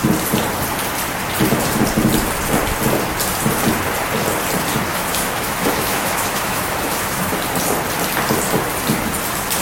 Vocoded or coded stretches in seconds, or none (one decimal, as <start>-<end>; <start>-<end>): 4.9-7.4